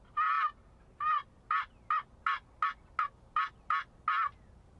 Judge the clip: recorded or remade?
recorded